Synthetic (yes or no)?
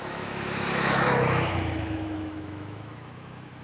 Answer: yes